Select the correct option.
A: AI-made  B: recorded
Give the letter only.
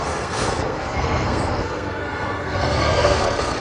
A